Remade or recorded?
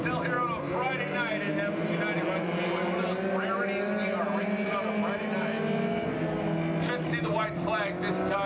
recorded